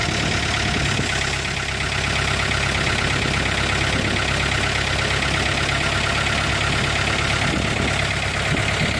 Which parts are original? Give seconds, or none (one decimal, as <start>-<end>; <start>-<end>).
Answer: 0.0-9.0